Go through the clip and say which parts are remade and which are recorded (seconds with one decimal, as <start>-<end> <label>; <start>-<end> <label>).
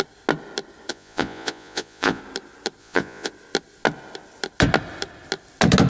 0.0-0.9 recorded; 0.9-2.2 remade; 2.2-2.8 recorded; 2.8-3.3 remade; 3.3-5.9 recorded